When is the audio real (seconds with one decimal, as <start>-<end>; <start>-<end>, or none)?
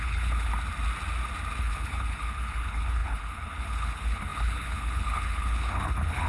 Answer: 0.5-1.6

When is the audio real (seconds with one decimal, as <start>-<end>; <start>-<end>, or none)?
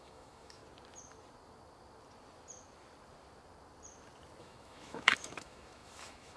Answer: 0.6-4.4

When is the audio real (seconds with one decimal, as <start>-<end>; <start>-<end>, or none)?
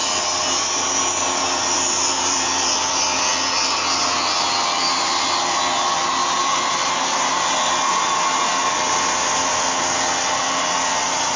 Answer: 3.0-11.4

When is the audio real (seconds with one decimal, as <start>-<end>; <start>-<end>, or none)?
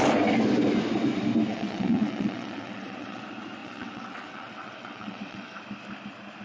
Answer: 0.0-1.5; 3.2-3.6; 5.6-6.4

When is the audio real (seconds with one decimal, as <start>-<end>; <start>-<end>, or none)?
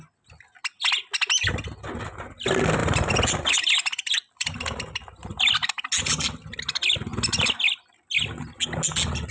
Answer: 0.0-2.8; 5.9-9.3